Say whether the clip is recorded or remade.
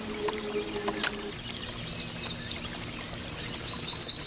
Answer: recorded